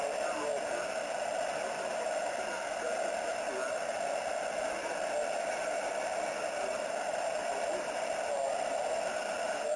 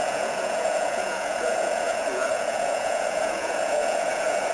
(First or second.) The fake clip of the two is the second